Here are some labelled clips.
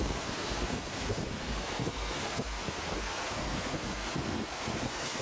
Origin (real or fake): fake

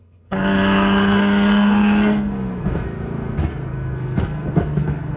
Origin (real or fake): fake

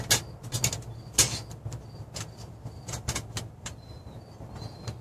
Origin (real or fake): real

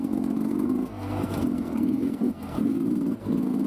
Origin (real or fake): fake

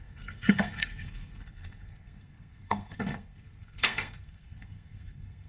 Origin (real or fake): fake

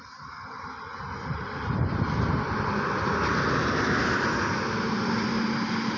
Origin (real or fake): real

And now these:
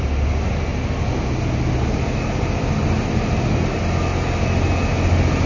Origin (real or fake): real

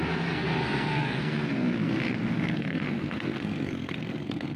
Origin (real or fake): fake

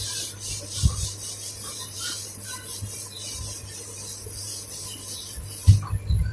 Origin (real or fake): real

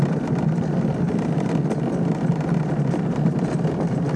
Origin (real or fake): real